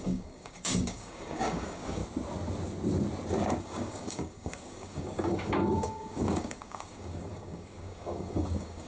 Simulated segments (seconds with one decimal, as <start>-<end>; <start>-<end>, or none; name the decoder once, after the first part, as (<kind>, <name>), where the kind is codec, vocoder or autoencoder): 0.0-2.0 (codec, DAC); 3.6-8.9